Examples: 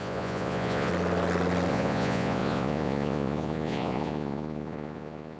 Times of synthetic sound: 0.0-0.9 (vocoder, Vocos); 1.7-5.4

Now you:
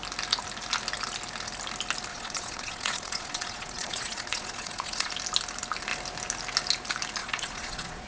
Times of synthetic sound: 2.1-5.1 (vocoder, Vocos); 7.2-8.1